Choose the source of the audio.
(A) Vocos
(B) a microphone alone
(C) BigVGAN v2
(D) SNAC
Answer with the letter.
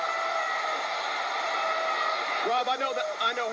B